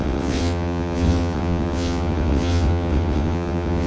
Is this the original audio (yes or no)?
no